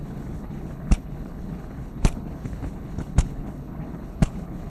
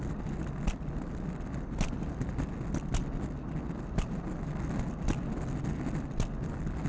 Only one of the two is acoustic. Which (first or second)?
second